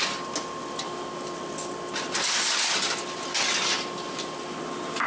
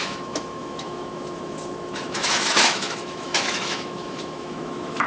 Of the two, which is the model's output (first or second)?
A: second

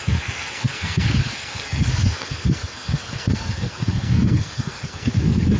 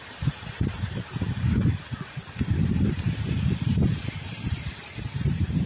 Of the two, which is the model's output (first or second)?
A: first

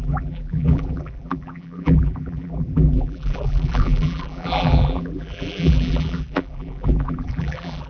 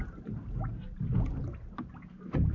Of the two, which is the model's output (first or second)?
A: first